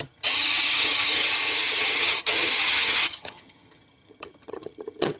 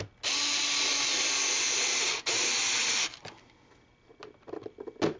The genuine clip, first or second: second